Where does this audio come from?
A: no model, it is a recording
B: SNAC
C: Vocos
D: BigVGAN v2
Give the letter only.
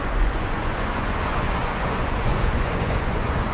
C